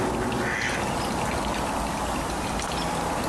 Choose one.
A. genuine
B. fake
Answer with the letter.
A